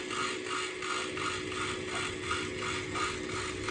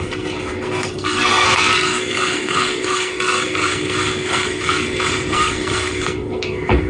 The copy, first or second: second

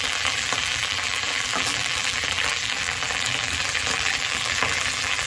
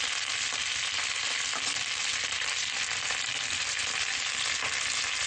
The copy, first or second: first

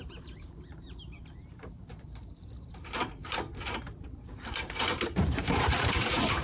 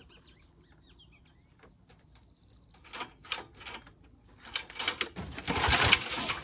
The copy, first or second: first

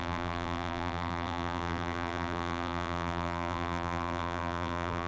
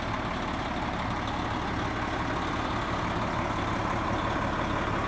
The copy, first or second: first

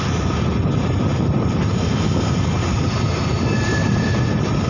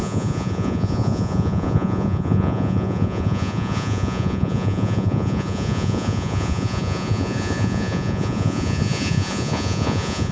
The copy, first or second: second